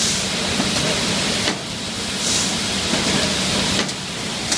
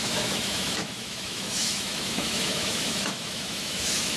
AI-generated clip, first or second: second